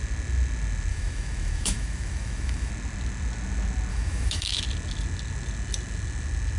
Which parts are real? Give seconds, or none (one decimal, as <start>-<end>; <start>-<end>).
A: 0.0-0.9; 2.7-3.9; 4.6-6.6